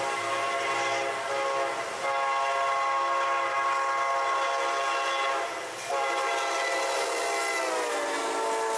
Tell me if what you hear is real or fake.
real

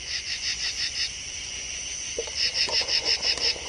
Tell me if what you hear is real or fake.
fake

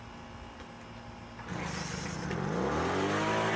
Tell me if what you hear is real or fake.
real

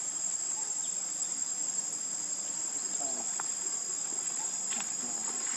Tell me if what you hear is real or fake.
fake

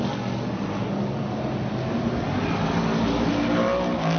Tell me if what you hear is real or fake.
real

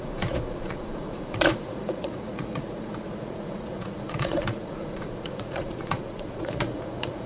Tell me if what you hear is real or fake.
fake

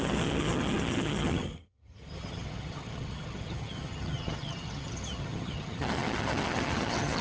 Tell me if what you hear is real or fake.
fake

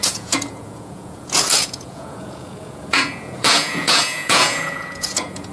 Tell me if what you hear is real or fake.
fake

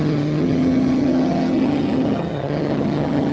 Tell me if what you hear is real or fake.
fake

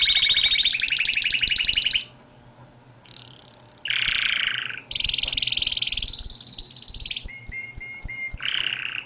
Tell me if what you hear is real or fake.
real